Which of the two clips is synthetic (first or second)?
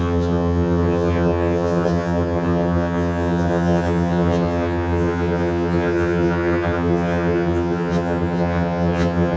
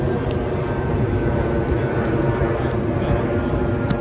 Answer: first